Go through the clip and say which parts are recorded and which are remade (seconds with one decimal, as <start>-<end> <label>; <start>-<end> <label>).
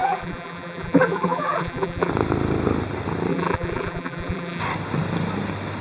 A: 0.0-2.1 remade; 2.1-3.3 recorded; 3.3-4.6 remade; 4.6-5.8 recorded